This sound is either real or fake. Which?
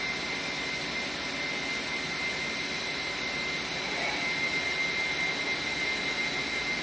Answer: real